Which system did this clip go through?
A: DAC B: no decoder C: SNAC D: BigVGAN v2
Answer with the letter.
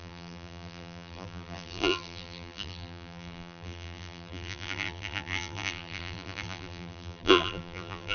D